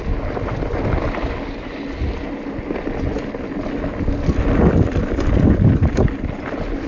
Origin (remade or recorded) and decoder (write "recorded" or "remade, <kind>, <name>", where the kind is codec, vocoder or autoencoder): recorded